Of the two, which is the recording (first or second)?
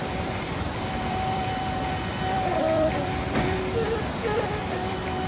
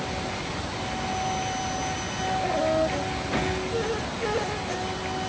second